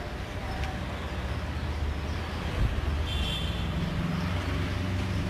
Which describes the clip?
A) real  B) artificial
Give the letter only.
A